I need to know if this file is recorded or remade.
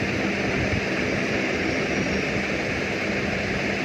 recorded